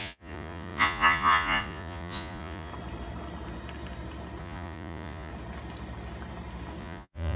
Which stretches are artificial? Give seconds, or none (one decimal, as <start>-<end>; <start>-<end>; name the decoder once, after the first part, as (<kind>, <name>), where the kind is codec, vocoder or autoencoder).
0.0-2.7 (vocoder, Vocos); 4.4-5.3; 6.8-7.4